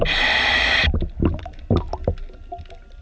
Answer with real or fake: real